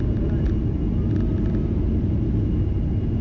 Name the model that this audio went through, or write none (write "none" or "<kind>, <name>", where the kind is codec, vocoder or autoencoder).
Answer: none